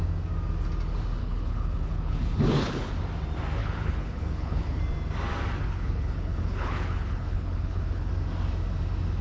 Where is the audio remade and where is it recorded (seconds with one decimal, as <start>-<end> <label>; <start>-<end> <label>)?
0.0-1.2 recorded; 1.2-2.9 remade; 2.9-3.6 recorded; 3.6-4.8 remade; 4.8-5.6 recorded; 5.6-8.1 remade; 8.1-9.2 recorded